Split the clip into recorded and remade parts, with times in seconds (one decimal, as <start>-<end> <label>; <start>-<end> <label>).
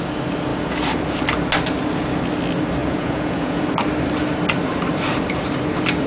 0.0-2.8 recorded; 2.8-3.6 remade; 3.6-6.1 recorded